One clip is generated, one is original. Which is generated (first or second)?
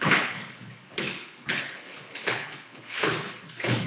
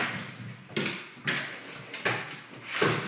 first